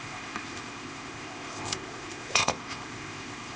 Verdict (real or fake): fake